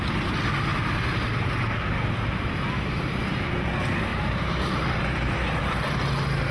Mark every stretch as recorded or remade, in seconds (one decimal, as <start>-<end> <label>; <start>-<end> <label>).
0.0-0.7 recorded; 0.7-1.5 remade; 1.5-4.1 recorded; 4.1-5.0 remade; 5.0-6.5 recorded